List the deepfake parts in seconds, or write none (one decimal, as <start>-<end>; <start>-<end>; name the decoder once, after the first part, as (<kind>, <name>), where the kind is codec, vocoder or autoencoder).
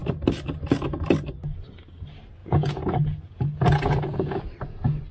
2.4-4.4 (vocoder, Vocos)